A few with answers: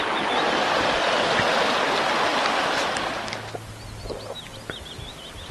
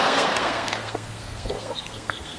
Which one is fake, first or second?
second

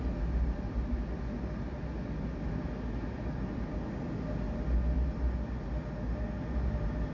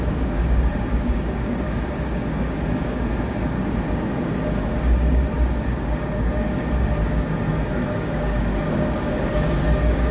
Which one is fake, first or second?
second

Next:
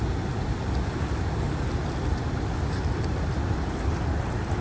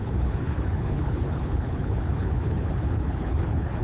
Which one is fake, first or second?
second